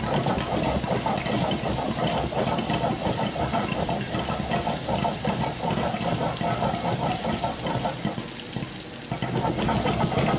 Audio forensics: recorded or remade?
recorded